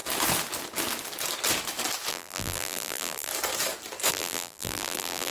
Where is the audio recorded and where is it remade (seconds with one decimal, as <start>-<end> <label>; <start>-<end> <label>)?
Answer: 0.0-2.1 recorded; 2.1-3.3 remade; 3.3-4.1 recorded; 4.1-5.3 remade